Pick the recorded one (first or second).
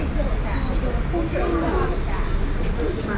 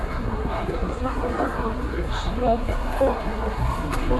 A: first